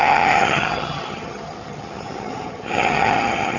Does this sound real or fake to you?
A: fake